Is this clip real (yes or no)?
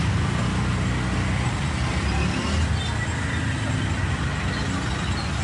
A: yes